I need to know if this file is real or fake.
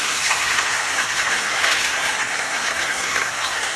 fake